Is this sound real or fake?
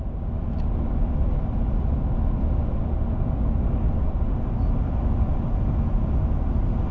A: real